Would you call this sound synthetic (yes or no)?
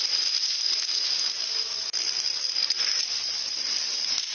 no